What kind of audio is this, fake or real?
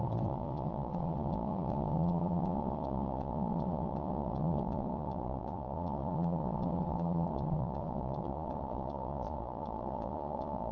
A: fake